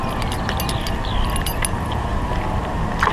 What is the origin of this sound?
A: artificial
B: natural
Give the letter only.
B